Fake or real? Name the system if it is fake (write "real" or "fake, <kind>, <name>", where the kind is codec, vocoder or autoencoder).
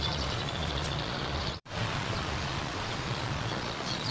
fake, vocoder, Vocos